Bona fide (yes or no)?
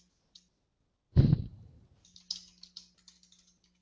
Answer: yes